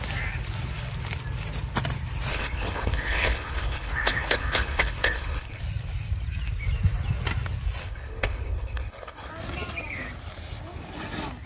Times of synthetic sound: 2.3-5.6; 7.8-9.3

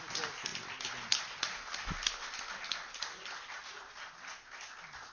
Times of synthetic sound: none

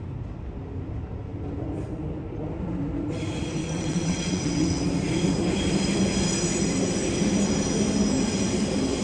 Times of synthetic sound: 3.6-4.8

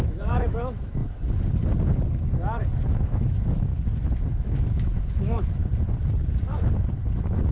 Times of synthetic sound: 0.0-1.0; 2.9-3.7; 4.3-5.6; 7.1-7.5

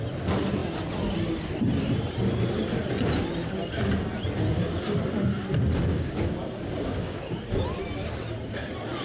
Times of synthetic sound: 5.9-7.2

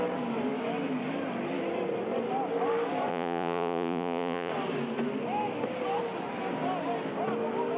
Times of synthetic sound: 3.1-4.5